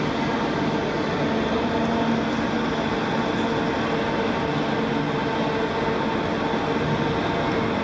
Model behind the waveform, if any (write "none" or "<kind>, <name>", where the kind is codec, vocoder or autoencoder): none